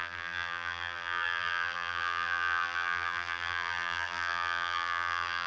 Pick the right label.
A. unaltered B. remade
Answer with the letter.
B